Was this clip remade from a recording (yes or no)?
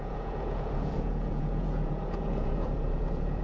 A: yes